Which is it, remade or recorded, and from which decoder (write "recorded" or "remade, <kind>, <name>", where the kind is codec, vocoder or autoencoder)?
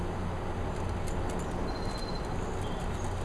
recorded